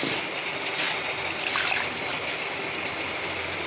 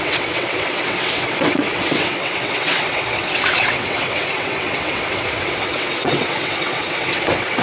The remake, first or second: second